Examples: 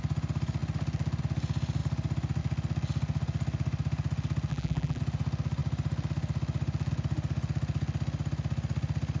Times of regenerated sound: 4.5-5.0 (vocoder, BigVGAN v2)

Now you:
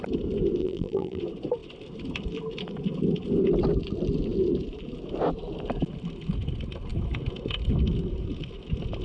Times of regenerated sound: 0.6-1.2 (vocoder, BigVGAN v2)

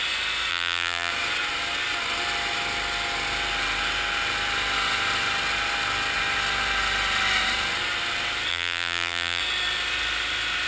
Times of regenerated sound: 0.5-1.1 (vocoder, BigVGAN v2); 8.5-9.4

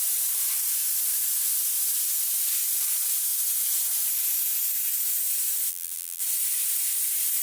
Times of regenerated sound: 5.7-6.2 (vocoder, BigVGAN v2)

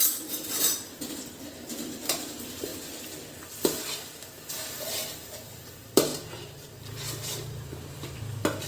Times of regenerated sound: 0.0-2.7 (vocoder, BigVGAN v2); 4.7-8.7

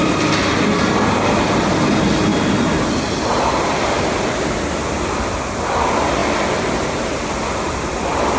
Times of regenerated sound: none

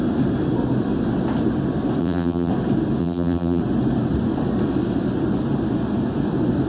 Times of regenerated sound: 2.0-2.5 (vocoder, BigVGAN v2); 3.0-3.6

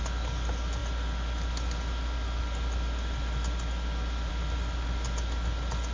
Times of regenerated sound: none